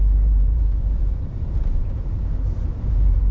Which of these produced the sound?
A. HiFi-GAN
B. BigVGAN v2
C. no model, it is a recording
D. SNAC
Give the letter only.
B